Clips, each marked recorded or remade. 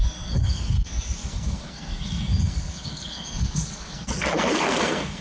remade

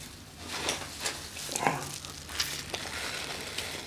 recorded